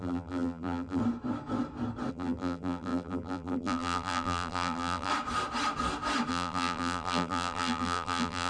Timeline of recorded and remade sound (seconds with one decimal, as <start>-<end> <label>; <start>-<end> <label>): 0.0-1.0 remade; 1.0-2.1 recorded; 2.1-5.1 remade; 5.1-6.3 recorded; 6.3-8.5 remade